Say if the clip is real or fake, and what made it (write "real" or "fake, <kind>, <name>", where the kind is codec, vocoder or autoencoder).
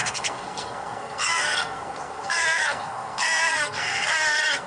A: fake, codec, SNAC